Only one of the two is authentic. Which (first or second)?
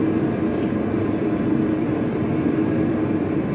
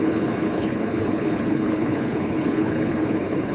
first